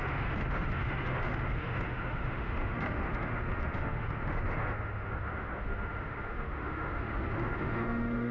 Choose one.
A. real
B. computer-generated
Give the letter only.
B